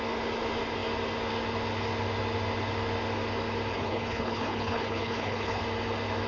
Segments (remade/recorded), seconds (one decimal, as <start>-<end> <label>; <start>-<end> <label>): 0.0-3.7 recorded; 3.7-5.6 remade; 5.6-6.3 recorded